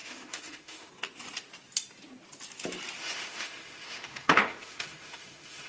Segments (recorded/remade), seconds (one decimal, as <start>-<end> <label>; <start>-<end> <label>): 0.0-0.9 remade; 0.9-3.0 recorded; 3.0-5.7 remade